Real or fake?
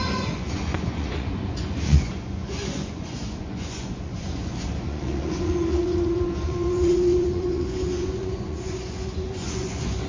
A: fake